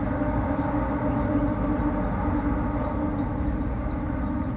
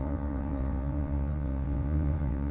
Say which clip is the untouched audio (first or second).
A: first